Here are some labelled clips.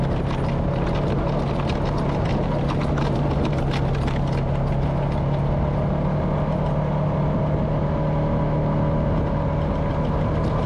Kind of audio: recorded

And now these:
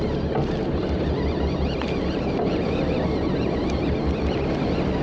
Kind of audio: recorded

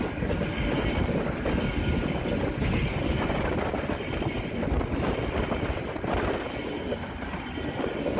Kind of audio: recorded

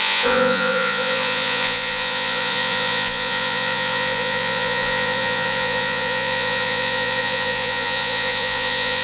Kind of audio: remade